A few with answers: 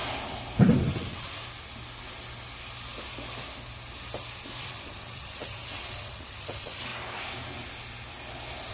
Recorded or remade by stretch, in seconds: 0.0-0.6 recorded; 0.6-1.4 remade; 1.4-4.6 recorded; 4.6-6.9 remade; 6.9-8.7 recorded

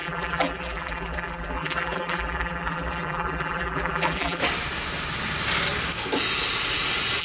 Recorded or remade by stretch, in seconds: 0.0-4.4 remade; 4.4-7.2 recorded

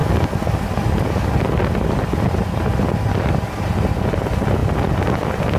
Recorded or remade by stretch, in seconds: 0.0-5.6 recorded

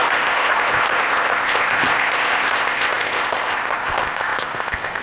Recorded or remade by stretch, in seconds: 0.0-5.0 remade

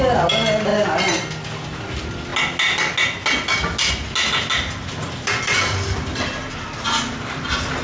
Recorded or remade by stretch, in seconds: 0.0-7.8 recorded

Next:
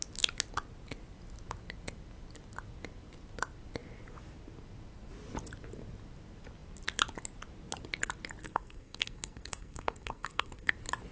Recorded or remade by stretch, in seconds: 0.0-8.4 recorded; 8.4-10.7 remade; 10.7-11.1 recorded